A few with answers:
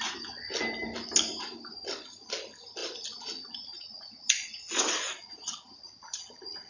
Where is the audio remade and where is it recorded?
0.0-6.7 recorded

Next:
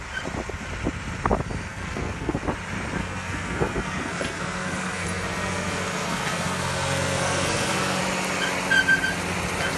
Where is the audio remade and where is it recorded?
0.0-1.7 recorded; 1.7-2.4 remade; 2.4-3.0 recorded; 3.0-8.0 remade; 8.0-9.8 recorded

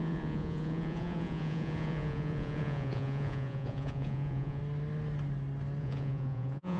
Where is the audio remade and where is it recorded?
0.0-4.6 remade; 4.6-5.8 recorded; 5.8-6.8 remade

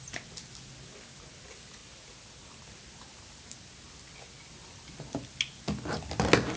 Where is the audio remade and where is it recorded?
0.0-6.6 recorded